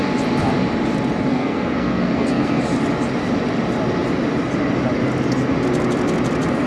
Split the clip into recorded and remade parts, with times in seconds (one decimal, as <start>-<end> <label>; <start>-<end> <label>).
0.0-1.3 recorded; 1.3-2.6 remade; 2.6-6.7 recorded